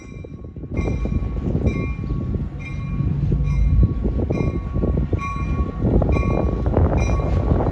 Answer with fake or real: real